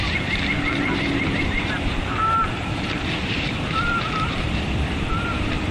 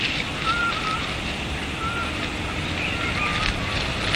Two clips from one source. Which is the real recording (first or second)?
second